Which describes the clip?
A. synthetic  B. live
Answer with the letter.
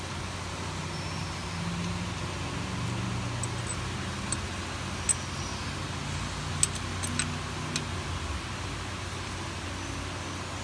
B